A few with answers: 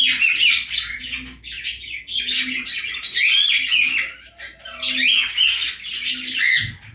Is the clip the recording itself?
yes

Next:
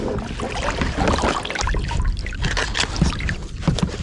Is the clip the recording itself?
yes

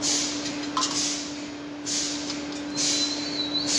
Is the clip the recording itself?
yes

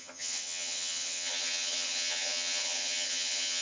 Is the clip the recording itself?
no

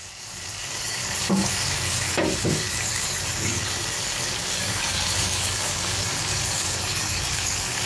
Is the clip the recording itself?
no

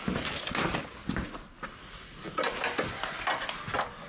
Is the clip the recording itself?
yes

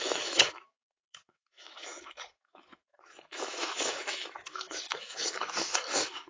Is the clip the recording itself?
no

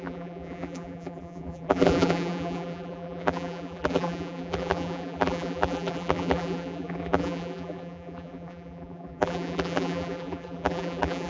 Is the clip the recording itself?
no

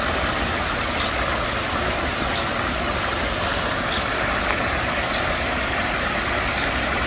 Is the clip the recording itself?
yes